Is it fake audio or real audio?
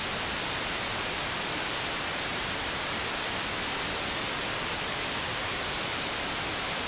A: fake